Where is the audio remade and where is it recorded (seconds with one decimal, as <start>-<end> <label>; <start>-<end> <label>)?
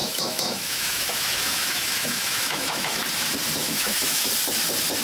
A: 0.0-3.0 remade; 3.0-3.6 recorded; 3.6-4.3 remade; 4.3-5.0 recorded